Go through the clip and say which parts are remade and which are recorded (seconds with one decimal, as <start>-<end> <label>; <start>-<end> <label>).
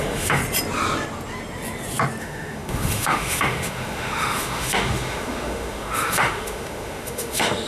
0.0-0.4 remade; 0.4-2.2 recorded; 2.2-7.7 remade